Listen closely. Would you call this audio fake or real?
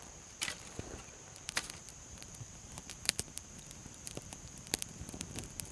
fake